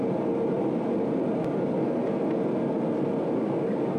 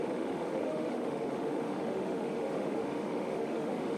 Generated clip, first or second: second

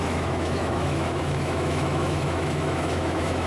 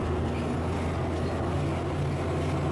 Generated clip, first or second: first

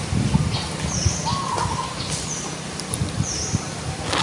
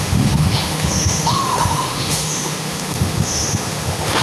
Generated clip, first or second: second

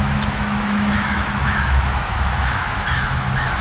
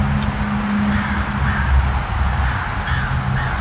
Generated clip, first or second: first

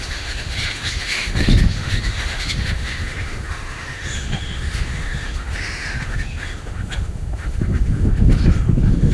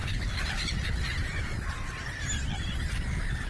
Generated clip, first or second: first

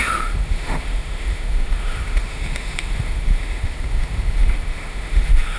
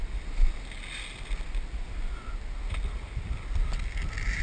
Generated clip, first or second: first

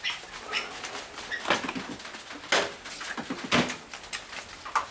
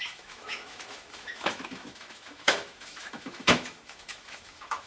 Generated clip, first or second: second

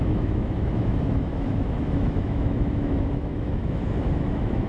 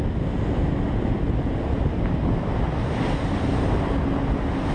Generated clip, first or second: first